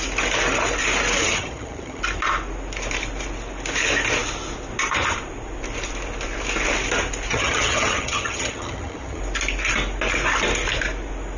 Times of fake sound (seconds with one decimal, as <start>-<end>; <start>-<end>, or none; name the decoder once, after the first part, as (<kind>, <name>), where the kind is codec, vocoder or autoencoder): 1.2-2.0 (vocoder, HiFi-GAN); 7.3-9.2